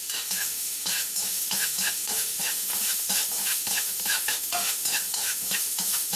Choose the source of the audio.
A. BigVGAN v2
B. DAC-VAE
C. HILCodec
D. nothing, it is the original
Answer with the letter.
B